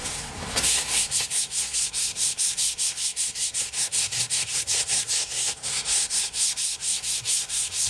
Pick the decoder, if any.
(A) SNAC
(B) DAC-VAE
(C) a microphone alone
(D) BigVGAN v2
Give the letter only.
A